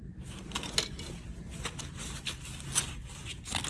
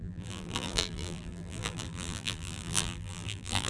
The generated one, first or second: second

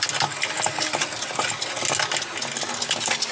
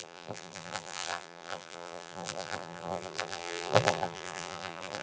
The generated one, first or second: second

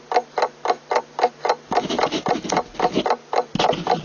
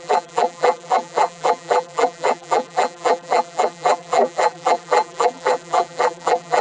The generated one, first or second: second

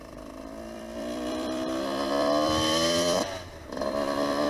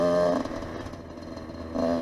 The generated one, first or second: first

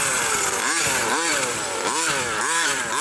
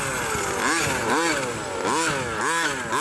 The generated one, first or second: first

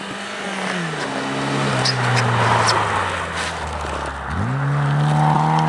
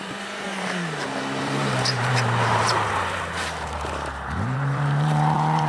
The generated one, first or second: second